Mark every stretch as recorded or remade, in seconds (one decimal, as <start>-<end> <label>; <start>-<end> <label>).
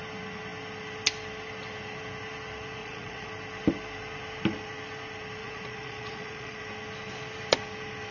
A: 0.0-2.8 recorded; 2.8-3.3 remade; 3.3-5.4 recorded; 5.4-6.6 remade; 6.6-8.1 recorded